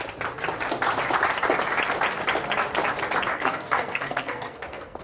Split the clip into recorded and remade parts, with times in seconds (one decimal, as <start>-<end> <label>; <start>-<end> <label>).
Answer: 0.0-3.3 recorded; 3.3-5.0 remade